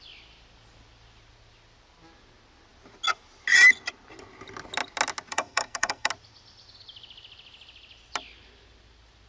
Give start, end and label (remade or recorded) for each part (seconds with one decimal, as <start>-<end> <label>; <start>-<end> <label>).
0.0-5.3 recorded; 5.3-6.1 remade; 6.1-9.3 recorded